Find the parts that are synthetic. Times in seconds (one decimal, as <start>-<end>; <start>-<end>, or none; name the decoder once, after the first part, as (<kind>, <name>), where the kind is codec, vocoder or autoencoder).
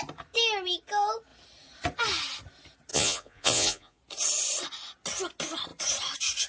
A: 2.9-4.0 (vocoder, Vocos)